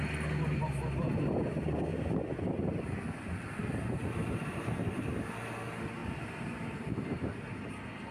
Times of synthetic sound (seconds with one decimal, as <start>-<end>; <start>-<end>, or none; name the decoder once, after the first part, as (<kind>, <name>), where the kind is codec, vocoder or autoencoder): 1.9-4.6 (vocoder, BigVGAN v2); 6.0-6.9